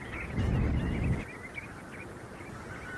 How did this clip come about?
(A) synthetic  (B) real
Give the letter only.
B